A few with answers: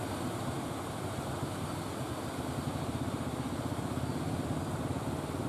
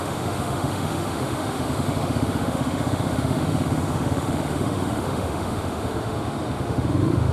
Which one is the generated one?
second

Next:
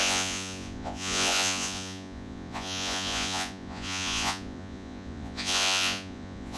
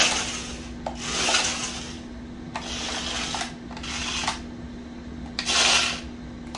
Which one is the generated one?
first